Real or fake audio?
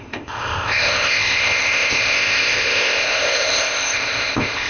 fake